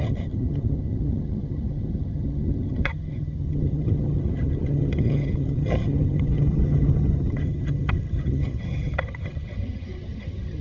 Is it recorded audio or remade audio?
remade